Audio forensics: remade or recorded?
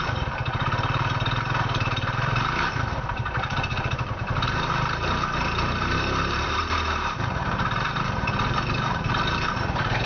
remade